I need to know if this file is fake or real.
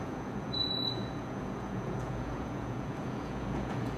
fake